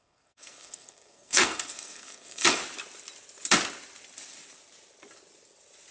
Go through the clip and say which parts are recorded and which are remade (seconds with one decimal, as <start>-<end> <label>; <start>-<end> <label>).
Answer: 0.0-2.6 remade; 2.6-5.9 recorded